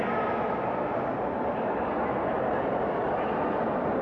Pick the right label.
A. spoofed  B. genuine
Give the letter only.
B